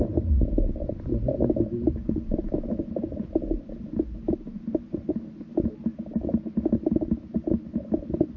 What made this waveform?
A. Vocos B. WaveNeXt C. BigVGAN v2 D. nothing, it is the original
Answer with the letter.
D